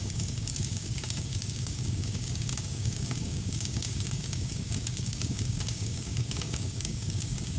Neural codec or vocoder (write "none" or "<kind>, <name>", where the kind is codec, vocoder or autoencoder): codec, DAC